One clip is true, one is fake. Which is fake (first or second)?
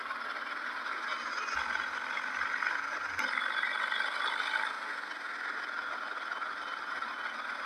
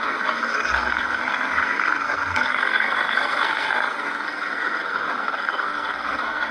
second